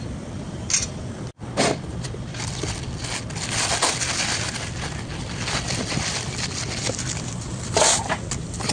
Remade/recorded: recorded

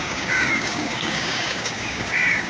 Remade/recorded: remade